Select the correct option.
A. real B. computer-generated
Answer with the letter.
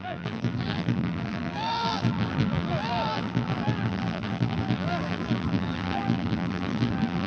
B